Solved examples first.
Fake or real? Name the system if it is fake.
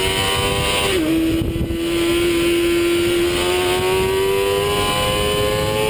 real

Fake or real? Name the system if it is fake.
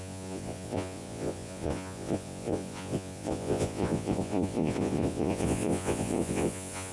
fake, vocoder, Vocos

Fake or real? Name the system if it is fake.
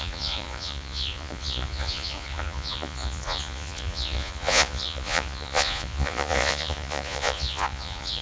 fake, vocoder, Vocos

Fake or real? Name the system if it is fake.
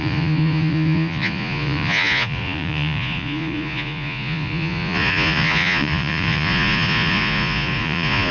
fake, vocoder, Vocos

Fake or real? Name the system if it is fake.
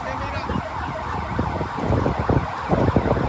real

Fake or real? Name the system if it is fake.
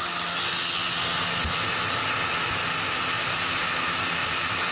real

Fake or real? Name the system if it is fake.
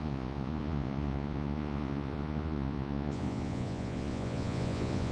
fake, vocoder, Vocos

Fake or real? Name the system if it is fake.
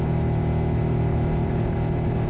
real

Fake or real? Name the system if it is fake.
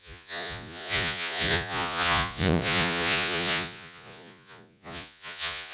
fake, vocoder, Vocos